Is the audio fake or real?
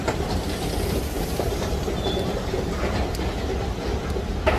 real